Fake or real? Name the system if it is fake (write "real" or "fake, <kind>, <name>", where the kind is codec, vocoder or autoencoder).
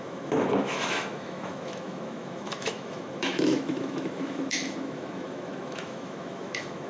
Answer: fake, autoencoder, DAC-VAE